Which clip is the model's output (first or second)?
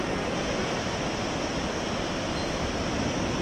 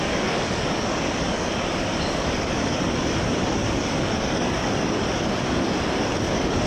second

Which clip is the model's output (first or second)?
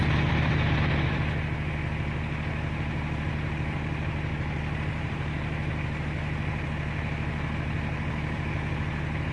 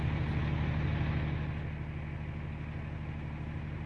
first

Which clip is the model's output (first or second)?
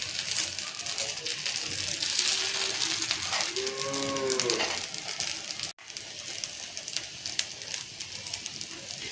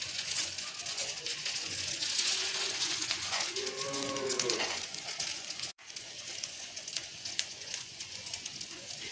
second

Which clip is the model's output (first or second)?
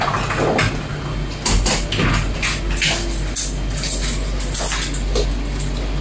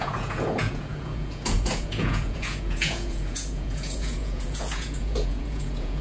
second